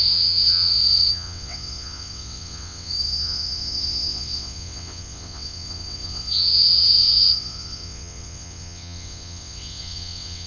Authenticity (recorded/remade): remade